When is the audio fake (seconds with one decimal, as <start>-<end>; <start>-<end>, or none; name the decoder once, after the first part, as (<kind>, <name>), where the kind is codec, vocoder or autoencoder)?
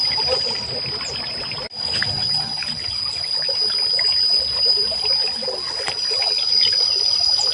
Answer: none